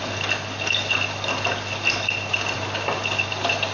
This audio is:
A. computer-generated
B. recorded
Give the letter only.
B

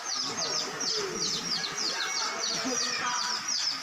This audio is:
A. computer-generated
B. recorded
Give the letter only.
B